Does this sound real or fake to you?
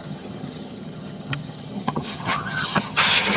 fake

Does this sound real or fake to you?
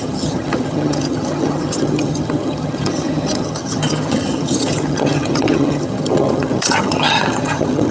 fake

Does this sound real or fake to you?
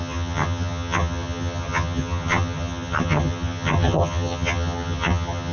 fake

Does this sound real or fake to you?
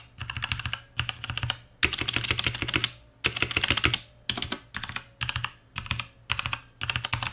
real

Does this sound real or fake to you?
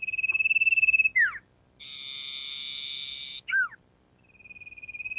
real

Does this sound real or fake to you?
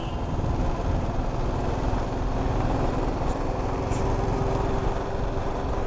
real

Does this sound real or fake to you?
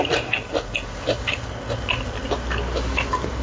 real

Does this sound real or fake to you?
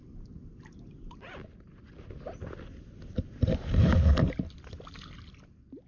real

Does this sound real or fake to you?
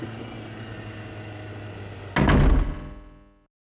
real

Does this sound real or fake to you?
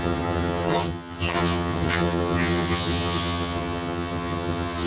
fake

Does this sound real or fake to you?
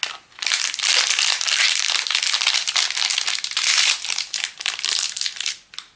real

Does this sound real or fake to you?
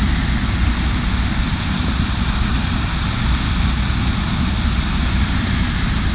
real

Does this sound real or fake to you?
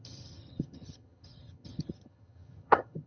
fake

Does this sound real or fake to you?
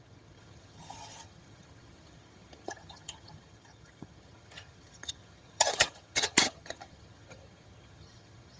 fake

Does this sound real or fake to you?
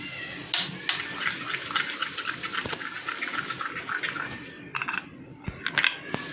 real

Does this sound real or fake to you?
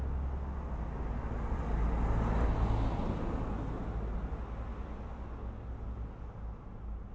real